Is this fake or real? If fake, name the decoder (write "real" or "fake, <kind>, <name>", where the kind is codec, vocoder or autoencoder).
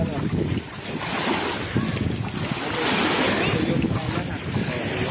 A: real